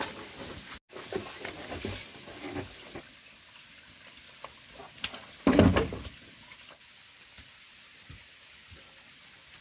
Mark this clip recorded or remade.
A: recorded